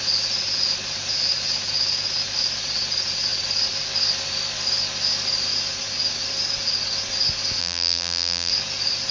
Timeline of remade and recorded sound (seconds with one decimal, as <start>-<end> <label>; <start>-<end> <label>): 0.0-7.6 recorded; 7.6-8.5 remade; 8.5-9.1 recorded